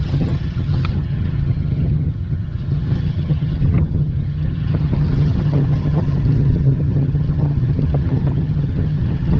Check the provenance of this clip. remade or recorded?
remade